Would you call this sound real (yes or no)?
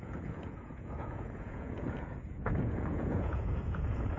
no